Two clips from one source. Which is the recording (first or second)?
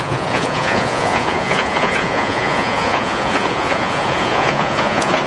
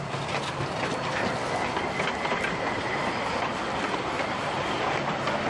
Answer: second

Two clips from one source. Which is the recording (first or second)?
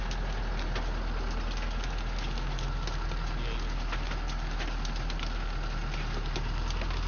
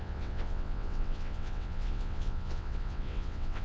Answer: first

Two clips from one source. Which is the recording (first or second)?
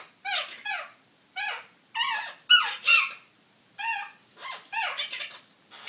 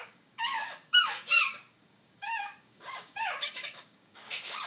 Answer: first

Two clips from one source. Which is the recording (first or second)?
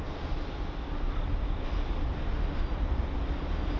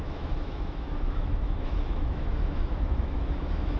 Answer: first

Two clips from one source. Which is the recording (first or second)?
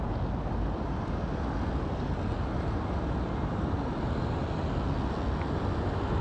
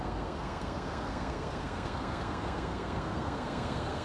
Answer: first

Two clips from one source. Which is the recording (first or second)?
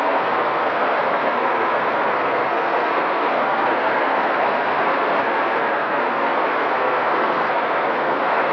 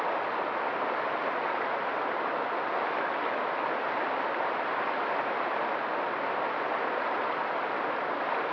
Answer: second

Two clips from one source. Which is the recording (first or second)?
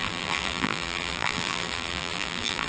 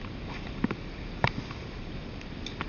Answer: second